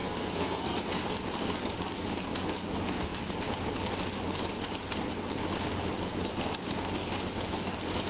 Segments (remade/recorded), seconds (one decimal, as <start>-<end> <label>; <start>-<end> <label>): 0.0-0.8 remade; 0.8-8.1 recorded